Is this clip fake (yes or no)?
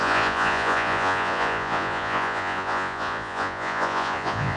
yes